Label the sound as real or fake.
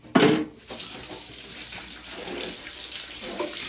real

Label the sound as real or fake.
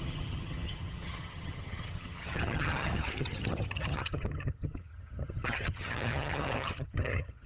fake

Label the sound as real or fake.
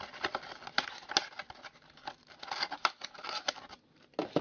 real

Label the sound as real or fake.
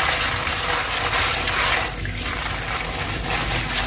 real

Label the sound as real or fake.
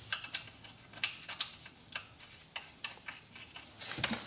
real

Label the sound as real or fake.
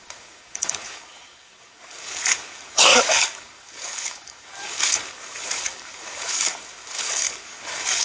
fake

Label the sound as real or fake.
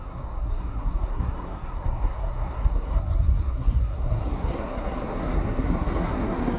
fake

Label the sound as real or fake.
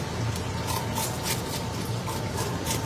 real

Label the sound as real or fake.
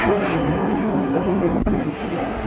fake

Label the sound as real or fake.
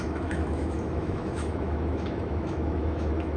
fake